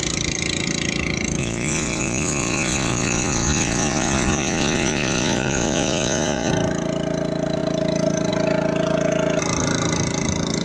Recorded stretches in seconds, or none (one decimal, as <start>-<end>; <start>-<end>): 0.0-1.4; 6.5-10.6